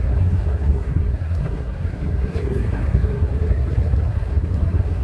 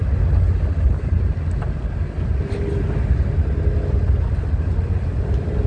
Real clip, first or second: second